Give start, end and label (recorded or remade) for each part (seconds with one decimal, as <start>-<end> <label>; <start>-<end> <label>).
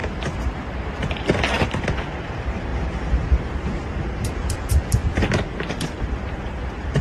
0.0-2.7 remade; 2.7-3.3 recorded; 3.3-3.8 remade; 3.8-4.4 recorded; 4.4-5.0 remade; 5.0-6.0 recorded; 6.0-7.0 remade